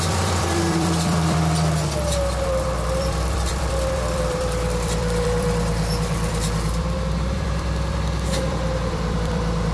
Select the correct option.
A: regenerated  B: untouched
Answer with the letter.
A